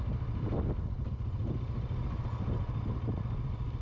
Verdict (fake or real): real